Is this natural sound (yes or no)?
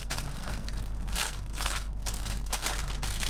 no